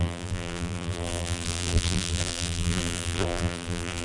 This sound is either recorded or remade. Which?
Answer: remade